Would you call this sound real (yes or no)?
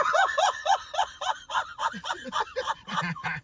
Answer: no